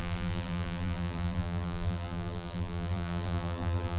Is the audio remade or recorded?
remade